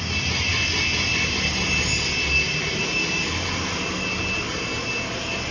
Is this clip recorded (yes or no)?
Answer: yes